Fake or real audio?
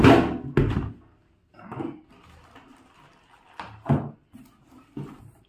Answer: real